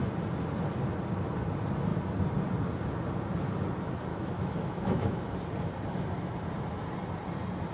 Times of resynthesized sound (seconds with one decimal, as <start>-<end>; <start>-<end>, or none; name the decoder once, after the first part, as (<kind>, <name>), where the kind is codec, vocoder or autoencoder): 4.1-5.4 (autoencoder, DAC-VAE)